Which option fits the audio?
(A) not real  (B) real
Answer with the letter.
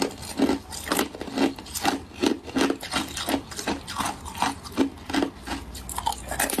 B